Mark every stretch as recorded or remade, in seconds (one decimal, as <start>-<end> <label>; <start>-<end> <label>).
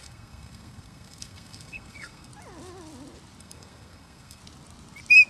0.0-2.3 remade; 2.3-3.4 recorded; 3.4-4.4 remade; 4.4-5.3 recorded